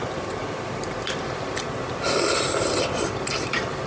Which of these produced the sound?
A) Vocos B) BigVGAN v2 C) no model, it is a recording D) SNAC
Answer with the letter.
C